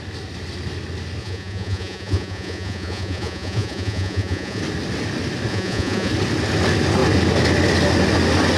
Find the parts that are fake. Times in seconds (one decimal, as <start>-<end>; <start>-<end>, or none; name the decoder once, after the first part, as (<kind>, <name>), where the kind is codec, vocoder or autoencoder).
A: 1.2-4.6 (vocoder, Vocos); 5.5-6.1